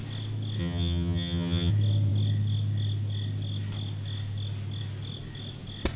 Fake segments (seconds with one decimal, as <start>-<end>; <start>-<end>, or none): 0.6-1.7